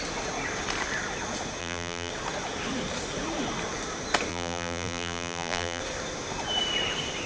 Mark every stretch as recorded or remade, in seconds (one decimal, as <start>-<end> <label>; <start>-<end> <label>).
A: 0.0-1.6 recorded; 1.6-2.1 remade; 2.1-4.3 recorded; 4.3-5.8 remade; 5.8-7.3 recorded